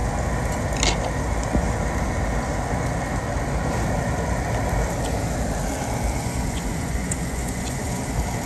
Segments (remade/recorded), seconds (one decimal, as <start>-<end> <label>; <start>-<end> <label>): 0.0-6.2 recorded; 6.2-8.0 remade; 8.0-8.5 recorded